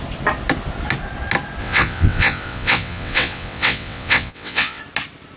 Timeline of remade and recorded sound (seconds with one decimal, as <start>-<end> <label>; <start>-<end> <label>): 0.0-1.6 recorded; 1.6-4.8 remade; 4.8-5.4 recorded